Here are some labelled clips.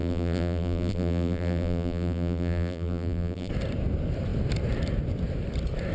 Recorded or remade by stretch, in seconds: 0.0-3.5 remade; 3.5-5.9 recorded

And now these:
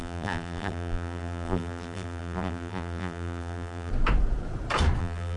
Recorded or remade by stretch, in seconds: 0.0-3.9 remade; 3.9-5.0 recorded; 5.0-5.4 remade